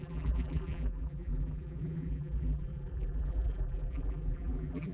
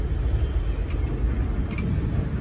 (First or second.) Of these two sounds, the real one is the second